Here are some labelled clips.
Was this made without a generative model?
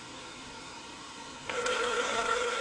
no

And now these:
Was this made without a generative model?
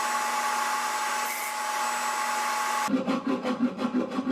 yes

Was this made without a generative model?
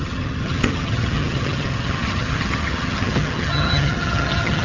no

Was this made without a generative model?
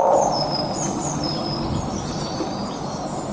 yes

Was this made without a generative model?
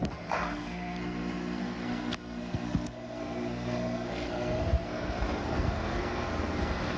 no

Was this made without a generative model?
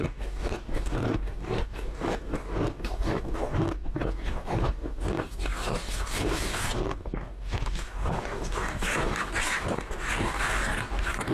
no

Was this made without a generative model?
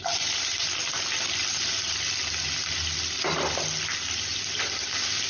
yes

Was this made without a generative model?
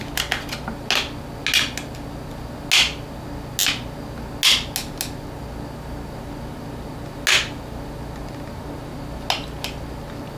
yes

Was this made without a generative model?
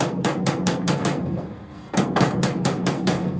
no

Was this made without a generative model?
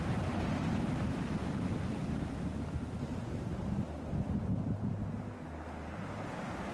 yes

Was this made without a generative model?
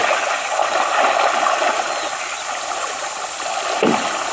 yes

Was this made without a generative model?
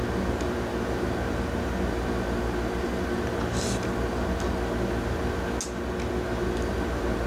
yes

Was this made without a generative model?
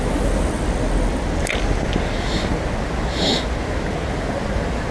yes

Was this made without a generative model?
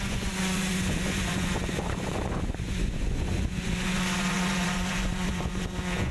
no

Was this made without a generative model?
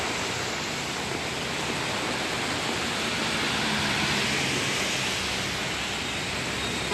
yes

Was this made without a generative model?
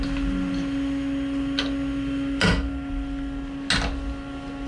yes